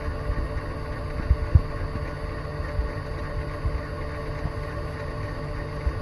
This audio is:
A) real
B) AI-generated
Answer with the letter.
A